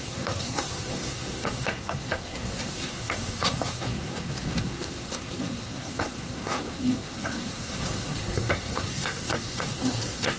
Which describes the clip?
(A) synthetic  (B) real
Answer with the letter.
A